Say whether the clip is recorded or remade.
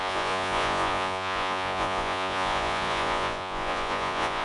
remade